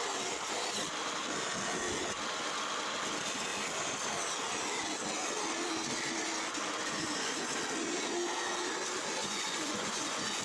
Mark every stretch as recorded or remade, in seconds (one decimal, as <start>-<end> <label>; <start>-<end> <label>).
0.0-6.8 recorded; 6.8-7.5 remade; 7.5-9.2 recorded; 9.2-10.4 remade